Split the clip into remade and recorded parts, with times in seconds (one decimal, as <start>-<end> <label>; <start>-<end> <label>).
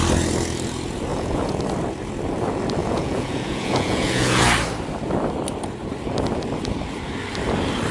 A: 0.0-1.1 recorded; 1.1-1.6 remade; 1.6-2.8 recorded; 2.8-4.4 remade; 4.4-7.9 recorded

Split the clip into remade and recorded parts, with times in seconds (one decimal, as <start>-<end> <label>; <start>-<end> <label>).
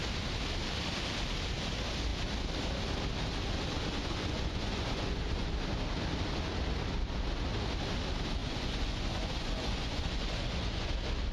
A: 0.0-4.0 recorded; 4.0-5.5 remade; 5.5-8.4 recorded; 8.4-10.9 remade; 10.9-11.3 recorded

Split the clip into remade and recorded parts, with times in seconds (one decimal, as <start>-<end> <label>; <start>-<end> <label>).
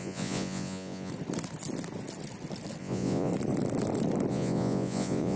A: 0.0-1.1 remade; 1.1-2.8 recorded; 2.8-3.3 remade; 3.3-4.3 recorded; 4.3-5.4 remade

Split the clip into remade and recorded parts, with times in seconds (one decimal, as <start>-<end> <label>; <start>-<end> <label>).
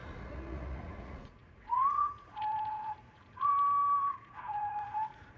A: 0.0-3.5 remade; 3.5-4.1 recorded; 4.1-5.4 remade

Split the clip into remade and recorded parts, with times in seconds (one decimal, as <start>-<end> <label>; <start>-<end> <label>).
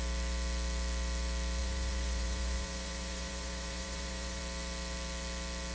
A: 0.0-1.6 recorded; 1.6-4.4 remade; 4.4-5.7 recorded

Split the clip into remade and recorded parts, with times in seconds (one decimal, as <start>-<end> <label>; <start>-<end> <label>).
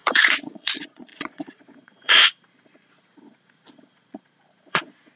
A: 0.0-5.2 remade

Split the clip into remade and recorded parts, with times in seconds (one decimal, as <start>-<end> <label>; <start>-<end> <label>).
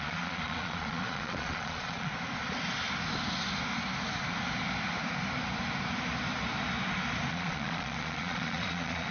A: 0.0-2.1 remade; 2.1-7.3 recorded; 7.3-9.1 remade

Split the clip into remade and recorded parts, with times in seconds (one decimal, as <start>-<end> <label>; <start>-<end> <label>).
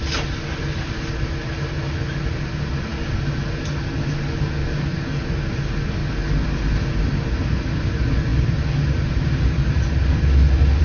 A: 0.0-10.8 recorded